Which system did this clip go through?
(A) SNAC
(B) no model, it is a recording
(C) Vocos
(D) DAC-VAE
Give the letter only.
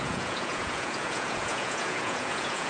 C